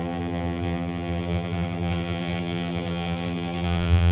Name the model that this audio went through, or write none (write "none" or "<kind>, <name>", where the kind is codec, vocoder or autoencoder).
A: vocoder, BigVGAN v2